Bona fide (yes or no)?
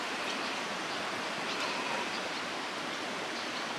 no